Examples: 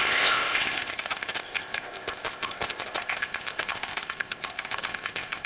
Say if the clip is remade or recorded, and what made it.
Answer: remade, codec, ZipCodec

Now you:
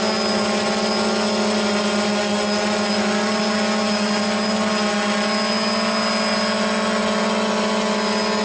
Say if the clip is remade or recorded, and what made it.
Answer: recorded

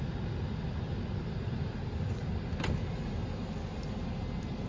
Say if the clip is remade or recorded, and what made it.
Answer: recorded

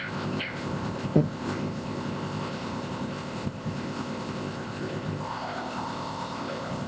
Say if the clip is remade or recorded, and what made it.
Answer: remade, codec, ZipCodec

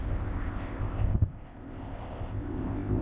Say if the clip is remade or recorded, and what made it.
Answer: remade, codec, ZipCodec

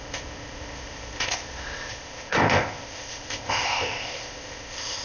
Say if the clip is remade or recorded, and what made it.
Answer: remade, codec, ZipCodec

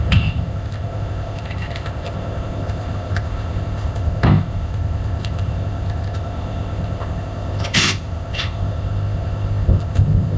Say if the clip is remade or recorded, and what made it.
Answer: remade, codec, ZipCodec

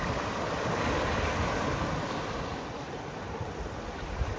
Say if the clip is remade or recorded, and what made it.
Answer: recorded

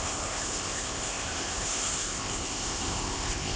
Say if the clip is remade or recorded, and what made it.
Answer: remade, codec, ZipCodec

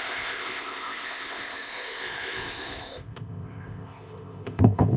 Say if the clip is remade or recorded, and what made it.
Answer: remade, codec, ZipCodec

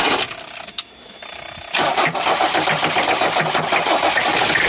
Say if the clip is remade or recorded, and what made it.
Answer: recorded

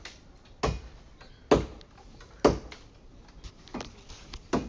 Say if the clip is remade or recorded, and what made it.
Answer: recorded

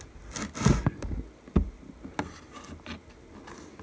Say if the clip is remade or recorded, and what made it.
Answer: recorded